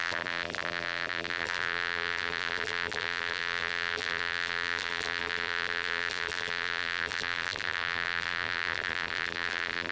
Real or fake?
fake